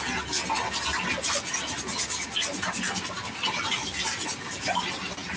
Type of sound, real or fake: real